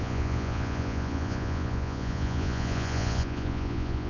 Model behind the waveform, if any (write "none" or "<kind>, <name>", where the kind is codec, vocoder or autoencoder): vocoder, Vocos